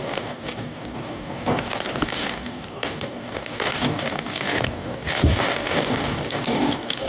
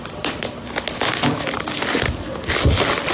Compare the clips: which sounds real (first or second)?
second